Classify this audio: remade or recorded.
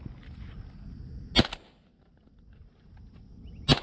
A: recorded